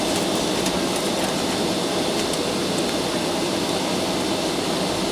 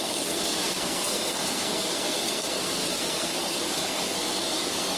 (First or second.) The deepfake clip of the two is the second